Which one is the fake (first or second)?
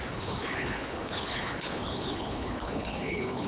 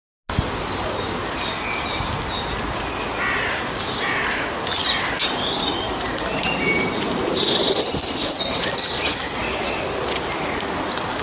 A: first